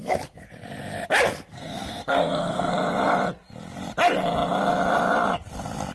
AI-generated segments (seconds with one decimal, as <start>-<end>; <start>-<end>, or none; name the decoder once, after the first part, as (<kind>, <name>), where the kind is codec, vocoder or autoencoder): 1.5-2.7 (codec, SNAC)